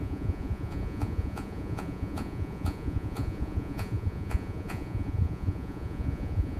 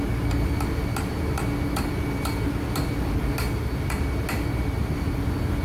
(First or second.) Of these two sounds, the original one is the second